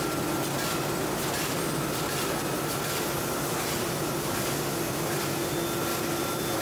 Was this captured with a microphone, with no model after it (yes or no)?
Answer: yes